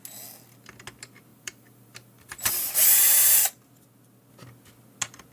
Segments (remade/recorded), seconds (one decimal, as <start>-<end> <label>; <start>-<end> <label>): 0.0-1.3 recorded; 1.3-2.7 remade; 2.7-5.3 recorded